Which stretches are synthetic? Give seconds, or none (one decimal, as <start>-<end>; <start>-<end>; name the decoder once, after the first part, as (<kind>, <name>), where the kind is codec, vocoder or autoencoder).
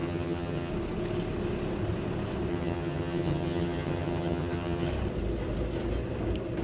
0.0-0.7 (vocoder, HiFi-GAN); 2.5-4.9